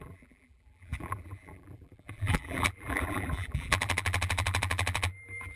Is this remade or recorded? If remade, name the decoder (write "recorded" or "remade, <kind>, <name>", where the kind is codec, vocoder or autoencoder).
remade, vocoder, BigVGAN v2